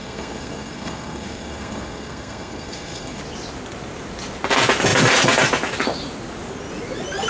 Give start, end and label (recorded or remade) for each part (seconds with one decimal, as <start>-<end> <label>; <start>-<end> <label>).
0.0-3.2 remade; 3.2-7.3 recorded